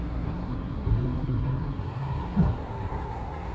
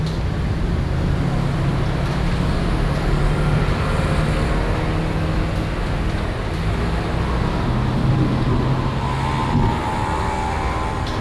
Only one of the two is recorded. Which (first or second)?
second